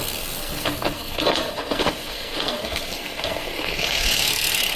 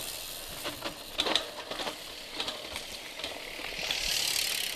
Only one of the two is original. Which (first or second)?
second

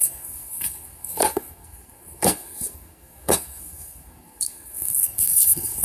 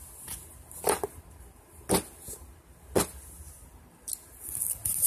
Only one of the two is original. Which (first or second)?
second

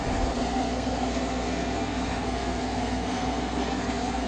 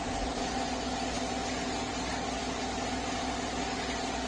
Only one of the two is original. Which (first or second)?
second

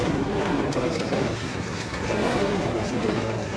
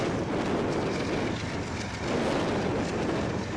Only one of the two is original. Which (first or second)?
second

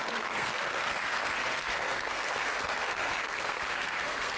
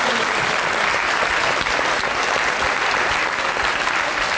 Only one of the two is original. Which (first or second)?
second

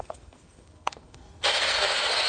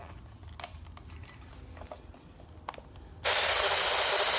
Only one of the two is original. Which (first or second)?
second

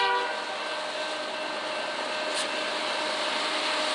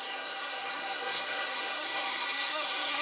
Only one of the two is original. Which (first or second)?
first